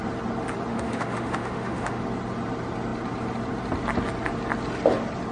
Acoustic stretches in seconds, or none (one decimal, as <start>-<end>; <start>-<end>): 0.0-0.7; 2.0-5.3